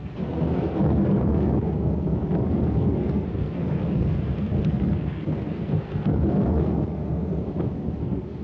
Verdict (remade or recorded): remade